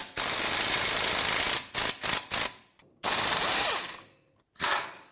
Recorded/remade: recorded